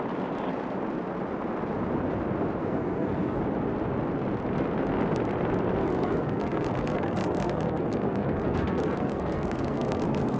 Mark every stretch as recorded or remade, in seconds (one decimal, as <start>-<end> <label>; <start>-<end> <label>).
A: 0.0-2.6 recorded; 2.6-3.4 remade; 3.4-5.8 recorded; 5.8-10.4 remade